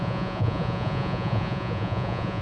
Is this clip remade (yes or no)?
yes